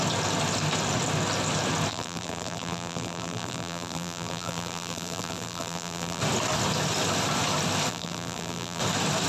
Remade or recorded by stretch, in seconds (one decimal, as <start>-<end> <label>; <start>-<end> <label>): 0.0-1.9 recorded; 1.9-6.2 remade; 6.2-7.9 recorded; 7.9-8.8 remade; 8.8-9.3 recorded